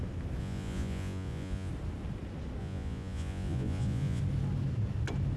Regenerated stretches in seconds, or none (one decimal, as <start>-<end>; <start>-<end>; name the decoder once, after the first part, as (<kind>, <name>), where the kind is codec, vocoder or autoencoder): 0.4-1.7 (vocoder, Vocos); 2.6-4.2